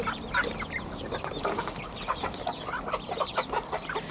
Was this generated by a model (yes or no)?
yes